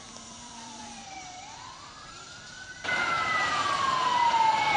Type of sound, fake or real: fake